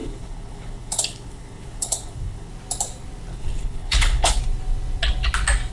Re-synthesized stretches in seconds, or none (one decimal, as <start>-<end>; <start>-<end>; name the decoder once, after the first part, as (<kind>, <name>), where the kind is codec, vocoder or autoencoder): 0.0-2.5 (codec, HILCodec); 3.3-4.4